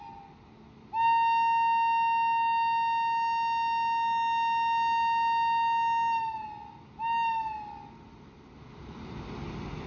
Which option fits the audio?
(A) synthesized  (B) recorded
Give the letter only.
B